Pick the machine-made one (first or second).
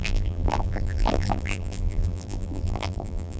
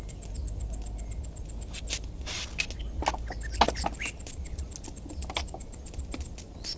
first